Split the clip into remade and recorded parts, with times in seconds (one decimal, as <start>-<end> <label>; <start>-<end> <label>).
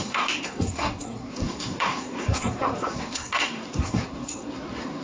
0.0-5.0 remade